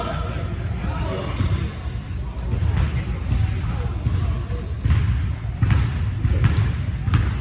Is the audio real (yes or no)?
yes